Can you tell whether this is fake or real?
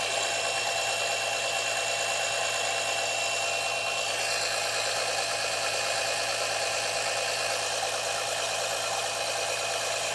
real